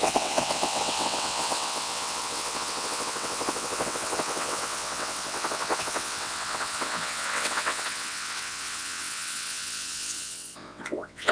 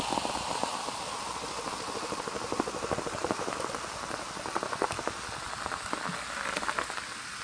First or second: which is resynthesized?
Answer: first